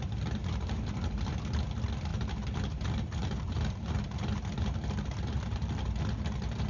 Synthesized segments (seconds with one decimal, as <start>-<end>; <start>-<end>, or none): 0.4-1.3; 2.1-6.0

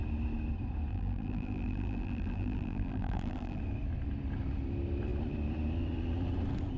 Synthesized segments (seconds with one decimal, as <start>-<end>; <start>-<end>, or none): 0.9-3.6

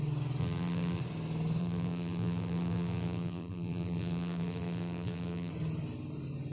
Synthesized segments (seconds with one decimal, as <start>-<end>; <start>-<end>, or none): 0.4-1.0; 1.6-5.5

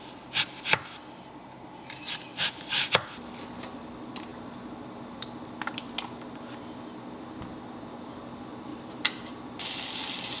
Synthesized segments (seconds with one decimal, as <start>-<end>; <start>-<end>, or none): 2.3-2.9; 8.7-9.4